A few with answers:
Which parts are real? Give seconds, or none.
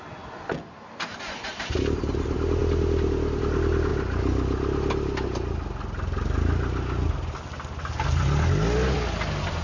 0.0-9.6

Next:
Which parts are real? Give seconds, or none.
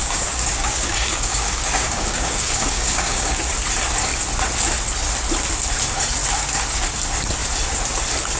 3.5-8.4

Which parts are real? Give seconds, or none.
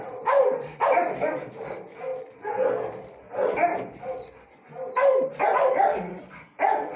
2.1-5.4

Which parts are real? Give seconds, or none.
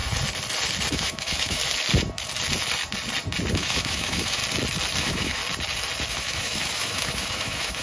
0.0-0.9; 1.6-3.5; 4.4-5.0; 5.4-6.1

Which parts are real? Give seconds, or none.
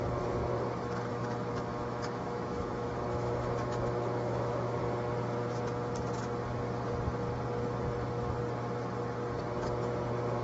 0.0-1.1; 4.8-10.4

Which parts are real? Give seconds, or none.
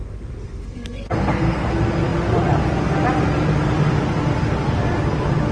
1.7-5.5